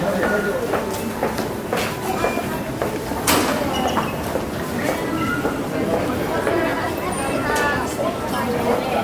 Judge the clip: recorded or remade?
recorded